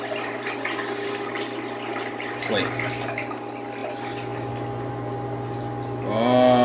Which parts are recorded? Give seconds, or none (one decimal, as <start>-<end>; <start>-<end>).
0.0-6.6